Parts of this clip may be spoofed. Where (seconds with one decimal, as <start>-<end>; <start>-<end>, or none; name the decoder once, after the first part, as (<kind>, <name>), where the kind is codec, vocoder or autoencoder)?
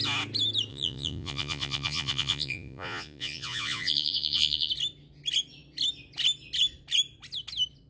0.7-4.7 (vocoder, Vocos)